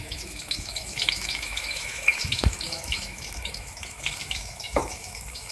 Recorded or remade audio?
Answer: remade